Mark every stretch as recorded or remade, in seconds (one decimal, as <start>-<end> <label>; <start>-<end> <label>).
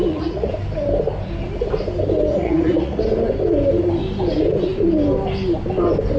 0.0-0.5 remade; 0.5-2.3 recorded; 2.3-3.0 remade; 3.0-6.2 recorded